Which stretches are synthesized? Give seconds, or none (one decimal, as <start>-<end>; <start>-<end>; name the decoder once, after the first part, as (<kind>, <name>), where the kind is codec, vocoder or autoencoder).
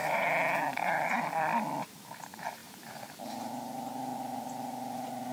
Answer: 0.0-1.4 (vocoder, BigVGAN v2); 2.6-3.2; 4.1-5.3